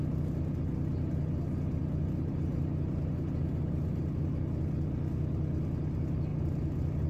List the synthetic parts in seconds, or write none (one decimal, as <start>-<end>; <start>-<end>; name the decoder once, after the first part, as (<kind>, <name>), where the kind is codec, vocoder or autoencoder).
1.8-4.4 (vocoder, BigVGAN v2); 6.3-7.1